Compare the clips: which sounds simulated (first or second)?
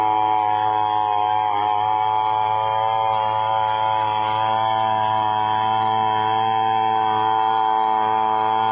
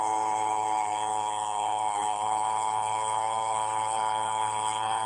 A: second